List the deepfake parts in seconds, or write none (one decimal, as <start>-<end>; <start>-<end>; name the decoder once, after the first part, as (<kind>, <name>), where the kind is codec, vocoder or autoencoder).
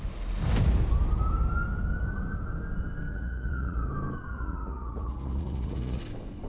3.1-3.9 (vocoder, Vocos); 4.3-6.0